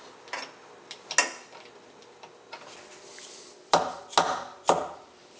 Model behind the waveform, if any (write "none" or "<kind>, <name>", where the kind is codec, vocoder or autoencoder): none